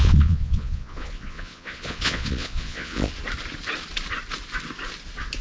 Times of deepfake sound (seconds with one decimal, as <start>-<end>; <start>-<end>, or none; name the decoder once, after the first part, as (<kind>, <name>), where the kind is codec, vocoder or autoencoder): 0.0-3.1 (vocoder, Vocos)